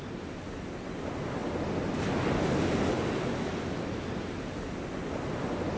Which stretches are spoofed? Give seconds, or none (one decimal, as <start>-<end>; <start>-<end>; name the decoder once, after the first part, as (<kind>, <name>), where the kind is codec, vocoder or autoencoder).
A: none

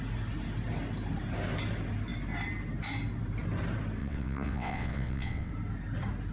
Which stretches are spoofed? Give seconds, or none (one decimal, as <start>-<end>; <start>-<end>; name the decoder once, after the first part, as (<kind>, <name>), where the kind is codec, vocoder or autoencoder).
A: 4.0-5.5 (vocoder, WaveNeXt)

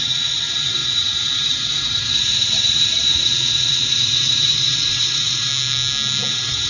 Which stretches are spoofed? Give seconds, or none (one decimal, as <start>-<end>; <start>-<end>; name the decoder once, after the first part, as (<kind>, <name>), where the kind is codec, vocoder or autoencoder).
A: 0.0-5.5 (vocoder, WaveNeXt); 6.3-6.7

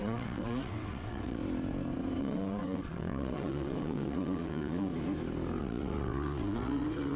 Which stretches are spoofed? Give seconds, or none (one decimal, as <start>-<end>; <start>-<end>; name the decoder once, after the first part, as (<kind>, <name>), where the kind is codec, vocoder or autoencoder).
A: 0.0-1.4 (vocoder, WaveNeXt); 2.2-4.9; 5.6-7.2

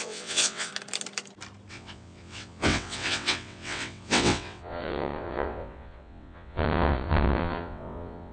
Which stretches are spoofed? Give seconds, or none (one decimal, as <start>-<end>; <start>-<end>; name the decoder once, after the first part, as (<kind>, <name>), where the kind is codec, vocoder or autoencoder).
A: 0.0-0.7 (vocoder, WaveNeXt); 1.7-8.3

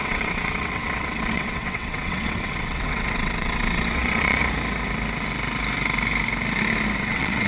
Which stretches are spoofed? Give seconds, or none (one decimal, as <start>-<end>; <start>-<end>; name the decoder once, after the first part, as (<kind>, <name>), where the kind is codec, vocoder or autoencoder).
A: 0.0-4.4 (vocoder, WaveNeXt); 7.0-7.5

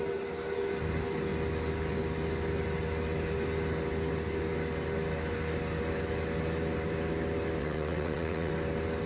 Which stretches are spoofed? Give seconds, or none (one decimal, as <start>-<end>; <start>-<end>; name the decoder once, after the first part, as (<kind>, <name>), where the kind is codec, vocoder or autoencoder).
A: 7.6-8.5 (vocoder, WaveNeXt)